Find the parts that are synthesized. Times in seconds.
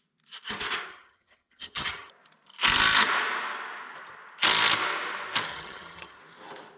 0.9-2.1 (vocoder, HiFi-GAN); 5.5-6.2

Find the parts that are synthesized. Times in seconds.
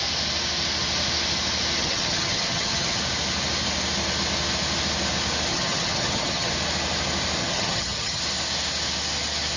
1.8-3.0 (vocoder, HiFi-GAN); 5.5-6.5; 7.4-8.2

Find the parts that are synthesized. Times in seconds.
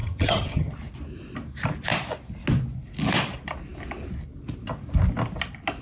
0.0-0.7 (vocoder, HiFi-GAN)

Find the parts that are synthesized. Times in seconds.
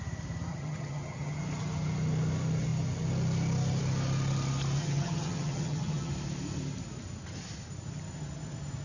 0.5-1.4 (vocoder, HiFi-GAN); 4.8-6.1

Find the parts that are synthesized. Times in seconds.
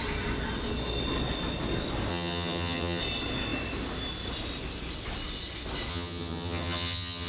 2.1-3.0 (vocoder, HiFi-GAN); 5.9-7.3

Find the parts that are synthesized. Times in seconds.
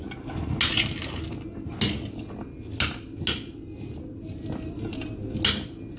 none